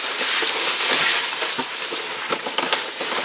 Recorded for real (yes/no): yes